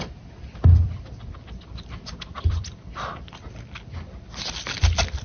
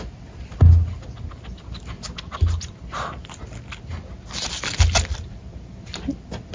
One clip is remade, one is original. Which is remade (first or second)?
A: first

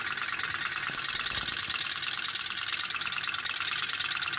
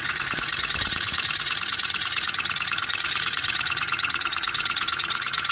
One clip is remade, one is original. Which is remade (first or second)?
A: second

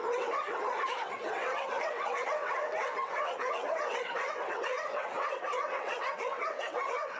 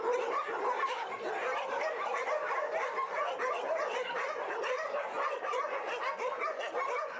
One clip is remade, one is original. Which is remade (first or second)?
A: first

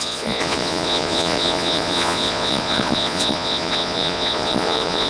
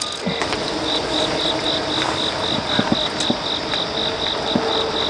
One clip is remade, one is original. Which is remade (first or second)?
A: first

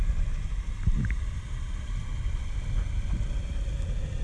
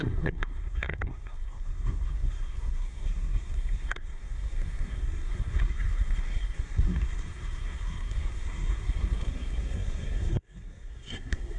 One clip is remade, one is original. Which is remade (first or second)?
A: second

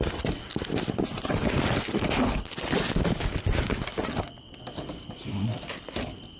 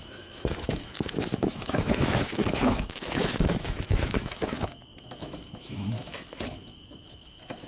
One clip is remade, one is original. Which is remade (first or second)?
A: second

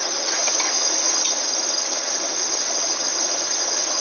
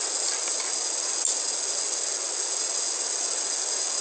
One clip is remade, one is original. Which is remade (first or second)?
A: first